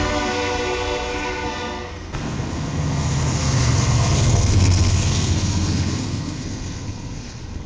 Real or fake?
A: fake